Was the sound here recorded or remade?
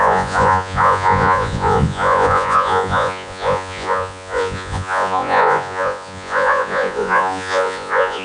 remade